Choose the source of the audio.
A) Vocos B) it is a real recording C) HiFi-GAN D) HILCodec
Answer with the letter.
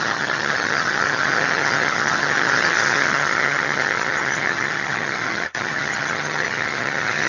C